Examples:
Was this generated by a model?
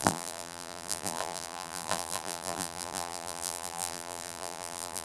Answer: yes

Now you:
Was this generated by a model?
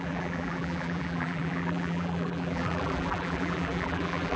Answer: yes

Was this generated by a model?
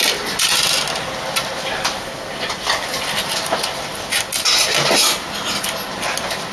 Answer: no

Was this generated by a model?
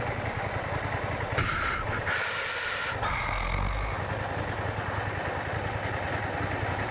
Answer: no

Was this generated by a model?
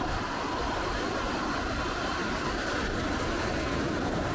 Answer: yes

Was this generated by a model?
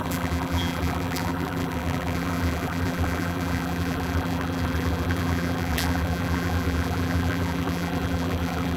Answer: yes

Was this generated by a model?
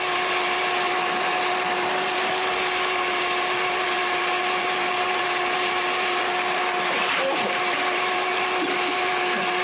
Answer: yes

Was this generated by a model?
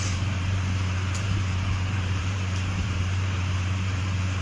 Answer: yes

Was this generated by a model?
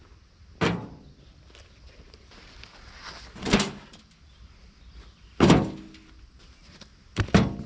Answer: no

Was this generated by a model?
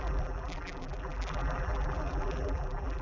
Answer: yes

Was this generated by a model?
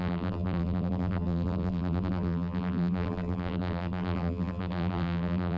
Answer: yes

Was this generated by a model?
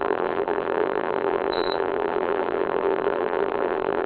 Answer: yes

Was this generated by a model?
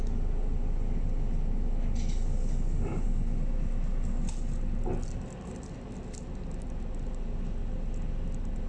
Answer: no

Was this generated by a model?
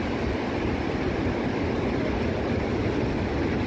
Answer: no